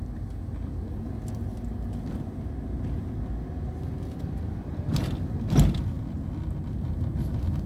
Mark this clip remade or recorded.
recorded